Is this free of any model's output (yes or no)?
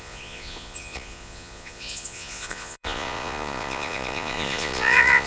no